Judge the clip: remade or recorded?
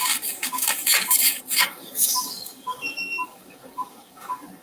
remade